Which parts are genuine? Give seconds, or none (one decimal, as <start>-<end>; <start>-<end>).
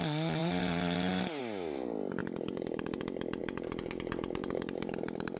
0.0-0.4; 1.4-2.2; 3.0-3.4